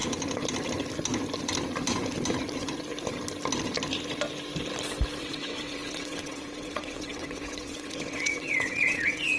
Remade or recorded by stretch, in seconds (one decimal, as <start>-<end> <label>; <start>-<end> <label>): 0.0-5.2 recorded; 5.2-9.4 remade